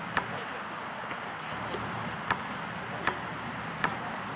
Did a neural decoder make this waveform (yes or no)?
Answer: no